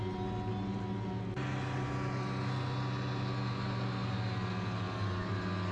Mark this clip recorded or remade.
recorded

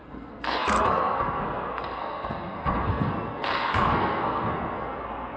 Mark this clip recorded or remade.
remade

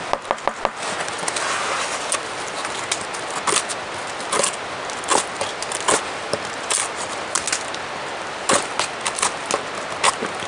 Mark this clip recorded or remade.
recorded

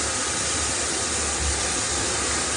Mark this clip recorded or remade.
recorded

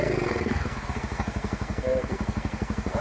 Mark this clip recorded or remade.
remade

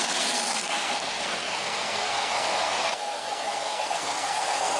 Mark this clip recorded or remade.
remade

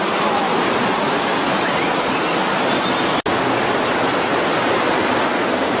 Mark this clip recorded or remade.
recorded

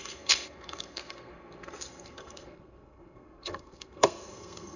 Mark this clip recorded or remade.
remade